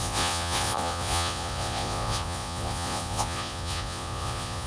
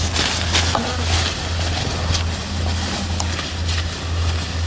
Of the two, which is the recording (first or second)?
second